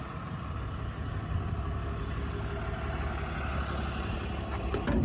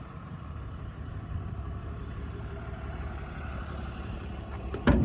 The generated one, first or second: second